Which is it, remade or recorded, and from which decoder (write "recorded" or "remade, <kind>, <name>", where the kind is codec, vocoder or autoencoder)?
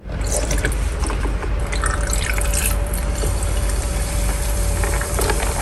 remade, vocoder, BigVGAN v2